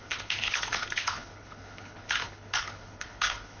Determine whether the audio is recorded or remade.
remade